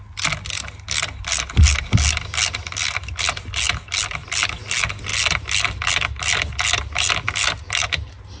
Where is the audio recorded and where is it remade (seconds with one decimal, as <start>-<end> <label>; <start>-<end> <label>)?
0.0-8.4 recorded